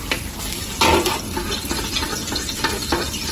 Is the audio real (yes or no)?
no